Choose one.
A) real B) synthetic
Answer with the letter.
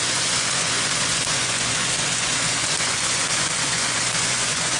B